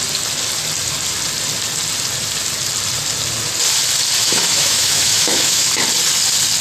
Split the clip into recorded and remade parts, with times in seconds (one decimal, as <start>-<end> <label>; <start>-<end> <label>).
0.0-4.2 recorded; 4.2-5.7 remade; 5.7-6.6 recorded